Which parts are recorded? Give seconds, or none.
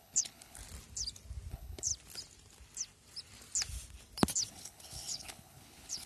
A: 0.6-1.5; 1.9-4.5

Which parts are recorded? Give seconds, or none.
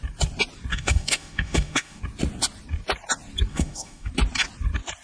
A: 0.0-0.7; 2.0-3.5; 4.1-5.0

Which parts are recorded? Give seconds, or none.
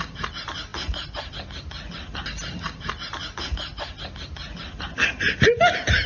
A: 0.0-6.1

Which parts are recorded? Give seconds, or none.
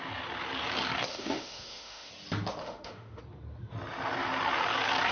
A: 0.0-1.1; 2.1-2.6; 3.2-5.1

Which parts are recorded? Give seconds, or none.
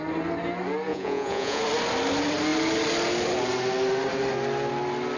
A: 0.0-0.9; 1.6-5.2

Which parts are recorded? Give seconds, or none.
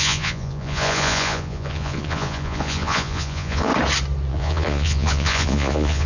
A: 3.7-4.3